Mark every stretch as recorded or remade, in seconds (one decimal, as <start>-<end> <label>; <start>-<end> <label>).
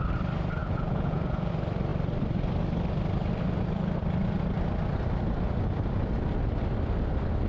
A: 0.0-0.6 recorded; 0.6-1.5 remade; 1.5-7.5 recorded